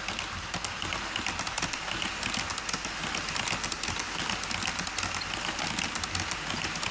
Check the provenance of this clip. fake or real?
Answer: real